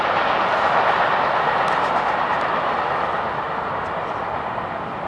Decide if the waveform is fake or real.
real